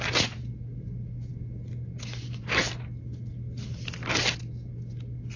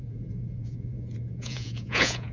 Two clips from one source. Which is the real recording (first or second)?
first